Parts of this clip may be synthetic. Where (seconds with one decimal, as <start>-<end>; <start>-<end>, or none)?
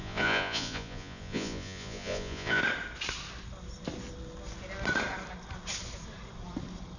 0.0-2.6